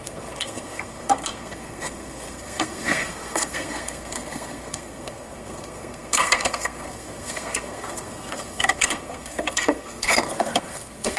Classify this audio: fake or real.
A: fake